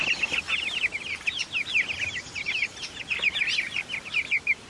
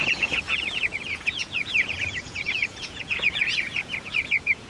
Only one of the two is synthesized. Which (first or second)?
second